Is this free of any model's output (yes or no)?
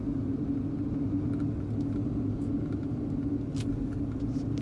yes